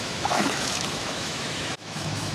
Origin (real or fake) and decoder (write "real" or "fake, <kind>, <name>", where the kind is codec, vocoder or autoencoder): fake, autoencoder, DAC-VAE